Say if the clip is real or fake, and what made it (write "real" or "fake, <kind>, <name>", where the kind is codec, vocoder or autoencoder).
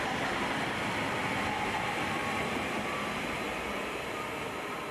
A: real